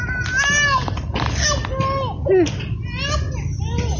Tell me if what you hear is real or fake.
real